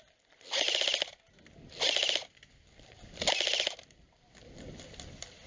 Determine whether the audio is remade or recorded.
recorded